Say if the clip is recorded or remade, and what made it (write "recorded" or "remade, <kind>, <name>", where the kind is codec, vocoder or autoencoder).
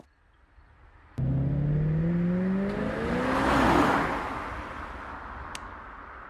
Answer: recorded